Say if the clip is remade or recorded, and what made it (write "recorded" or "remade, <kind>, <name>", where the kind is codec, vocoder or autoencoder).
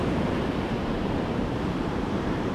remade, vocoder, BigVGAN v2